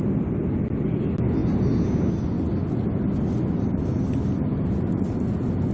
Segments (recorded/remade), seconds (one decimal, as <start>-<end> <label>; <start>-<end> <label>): 0.0-5.7 recorded